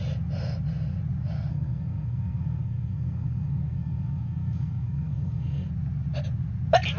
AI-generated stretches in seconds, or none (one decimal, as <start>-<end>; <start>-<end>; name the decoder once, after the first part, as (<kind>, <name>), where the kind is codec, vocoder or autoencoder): 1.5-5.7 (codec, SNAC)